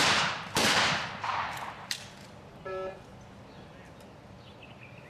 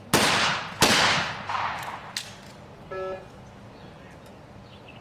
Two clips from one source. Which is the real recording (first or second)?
second